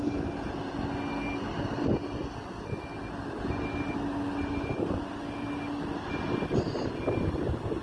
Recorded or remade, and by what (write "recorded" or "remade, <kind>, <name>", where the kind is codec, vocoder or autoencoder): recorded